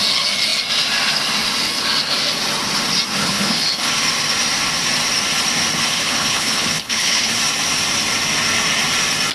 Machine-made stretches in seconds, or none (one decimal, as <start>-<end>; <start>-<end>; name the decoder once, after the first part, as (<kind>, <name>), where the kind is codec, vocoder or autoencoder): 3.2-3.9 (codec, HILCodec); 5.9-7.3